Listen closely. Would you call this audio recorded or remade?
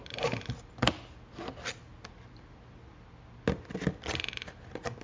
recorded